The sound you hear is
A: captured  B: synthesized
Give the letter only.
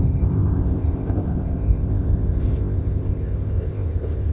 B